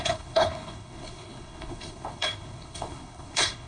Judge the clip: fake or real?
fake